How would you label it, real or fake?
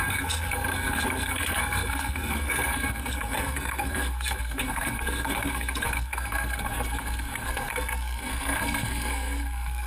fake